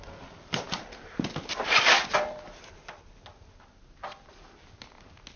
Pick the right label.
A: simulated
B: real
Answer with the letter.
B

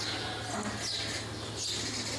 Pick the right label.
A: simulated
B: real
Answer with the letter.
B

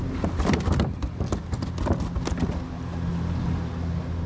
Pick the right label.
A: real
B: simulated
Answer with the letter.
A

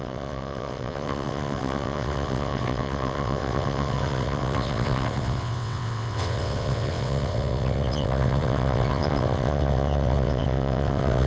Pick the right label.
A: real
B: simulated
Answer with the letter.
B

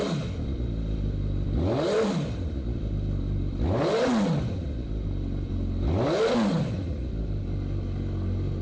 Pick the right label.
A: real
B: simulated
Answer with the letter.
A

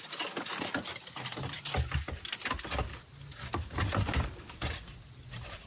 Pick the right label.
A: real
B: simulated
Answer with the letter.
A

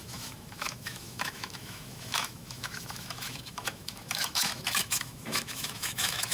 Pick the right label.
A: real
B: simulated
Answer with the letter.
B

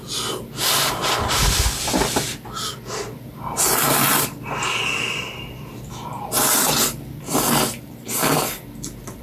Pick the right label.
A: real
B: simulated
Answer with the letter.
B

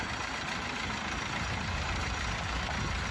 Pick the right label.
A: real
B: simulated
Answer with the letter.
A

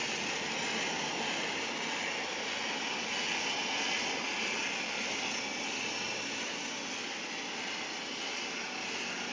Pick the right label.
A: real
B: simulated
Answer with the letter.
A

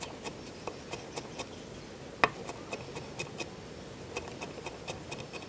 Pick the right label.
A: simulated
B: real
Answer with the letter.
B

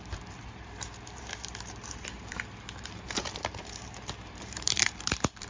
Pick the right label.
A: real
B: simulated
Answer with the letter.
B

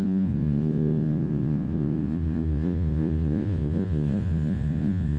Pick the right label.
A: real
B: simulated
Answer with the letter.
B